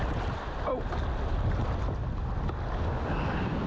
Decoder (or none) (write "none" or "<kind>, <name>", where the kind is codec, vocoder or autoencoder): none